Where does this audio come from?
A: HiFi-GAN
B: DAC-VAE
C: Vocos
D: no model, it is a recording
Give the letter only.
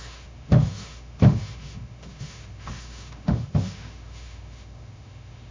B